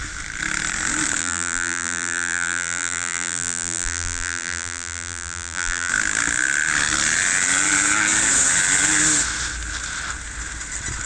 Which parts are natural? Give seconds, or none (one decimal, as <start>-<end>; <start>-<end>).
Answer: 0.0-1.2; 5.9-11.1